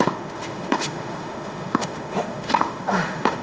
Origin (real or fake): fake